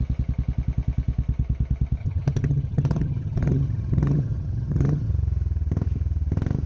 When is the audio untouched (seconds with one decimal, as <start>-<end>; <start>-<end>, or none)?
0.0-2.0; 5.1-6.7

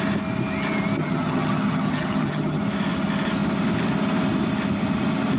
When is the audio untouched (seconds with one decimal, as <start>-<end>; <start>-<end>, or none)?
0.0-1.0; 2.6-5.4

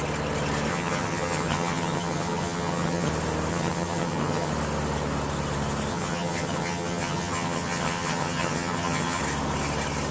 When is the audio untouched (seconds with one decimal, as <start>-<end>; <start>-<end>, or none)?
0.0-0.7; 3.1-3.5; 4.5-5.9; 9.2-10.1

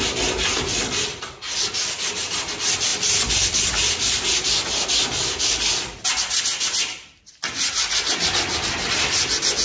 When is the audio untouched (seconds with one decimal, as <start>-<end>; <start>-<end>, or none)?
0.0-9.6

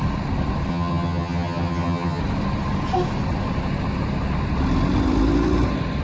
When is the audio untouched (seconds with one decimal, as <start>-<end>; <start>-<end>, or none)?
0.0-0.7; 2.2-6.0

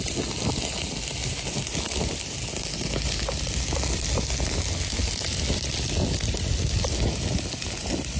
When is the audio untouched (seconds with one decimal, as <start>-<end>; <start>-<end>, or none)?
0.0-8.2

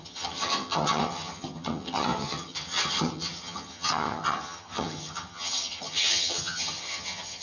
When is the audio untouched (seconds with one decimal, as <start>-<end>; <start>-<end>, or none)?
none